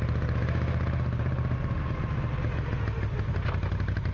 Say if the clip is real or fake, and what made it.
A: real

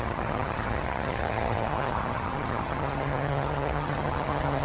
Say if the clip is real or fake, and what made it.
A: fake, vocoder, HiFi-GAN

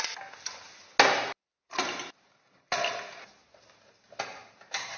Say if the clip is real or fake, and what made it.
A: real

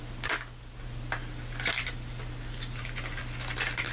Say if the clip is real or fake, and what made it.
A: real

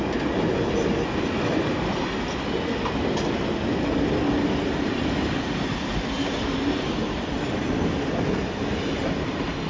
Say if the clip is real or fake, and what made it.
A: real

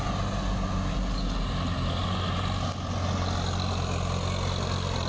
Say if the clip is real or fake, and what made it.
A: real